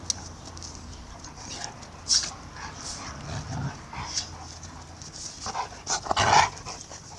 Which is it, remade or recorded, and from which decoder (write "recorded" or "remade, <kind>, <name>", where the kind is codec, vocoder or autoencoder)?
recorded